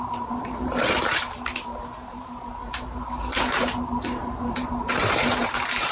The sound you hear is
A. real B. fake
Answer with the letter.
B